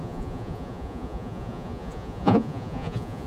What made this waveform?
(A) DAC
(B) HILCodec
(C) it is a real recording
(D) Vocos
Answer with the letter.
D